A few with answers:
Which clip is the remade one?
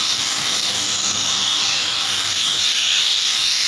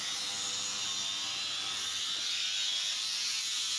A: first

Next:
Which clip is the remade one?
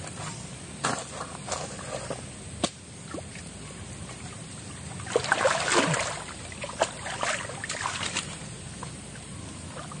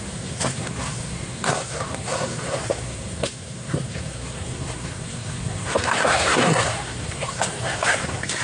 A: second